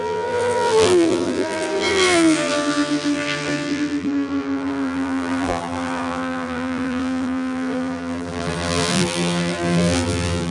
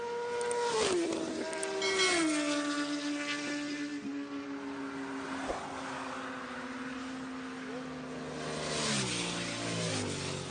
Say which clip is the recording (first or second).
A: second